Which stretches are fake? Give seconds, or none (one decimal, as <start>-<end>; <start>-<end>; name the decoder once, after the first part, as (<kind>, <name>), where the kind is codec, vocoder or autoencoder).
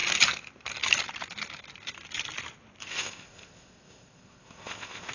2.8-5.1 (codec, ZipCodec)